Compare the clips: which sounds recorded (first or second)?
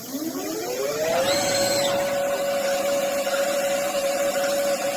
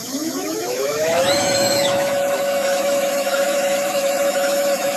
first